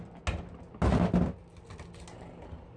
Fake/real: real